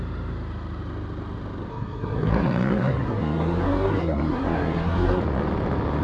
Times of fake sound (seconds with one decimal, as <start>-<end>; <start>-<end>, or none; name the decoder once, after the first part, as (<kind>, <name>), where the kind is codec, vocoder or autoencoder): 1.7-5.2 (codec, SNAC)